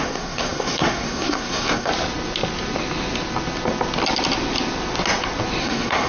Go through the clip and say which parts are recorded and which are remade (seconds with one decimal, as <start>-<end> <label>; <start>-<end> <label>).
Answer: 0.0-1.9 remade; 1.9-5.6 recorded; 5.6-6.1 remade